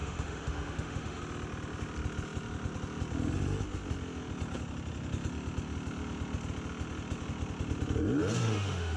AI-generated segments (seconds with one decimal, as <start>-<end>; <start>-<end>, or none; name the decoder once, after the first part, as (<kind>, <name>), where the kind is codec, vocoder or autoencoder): 0.0-1.2 (autoencoder, DAC-VAE); 8.4-9.0